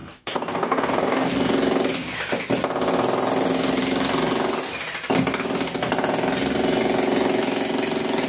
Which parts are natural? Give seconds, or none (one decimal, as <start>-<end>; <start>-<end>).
1.3-8.3